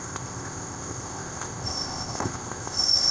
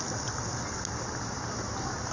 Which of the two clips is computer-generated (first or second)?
first